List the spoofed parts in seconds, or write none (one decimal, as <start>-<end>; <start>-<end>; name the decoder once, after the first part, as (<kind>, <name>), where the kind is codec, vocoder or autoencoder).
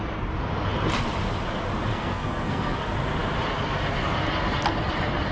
1.9-2.8 (codec, SNAC)